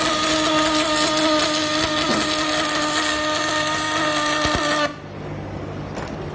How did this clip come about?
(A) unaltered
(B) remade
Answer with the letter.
A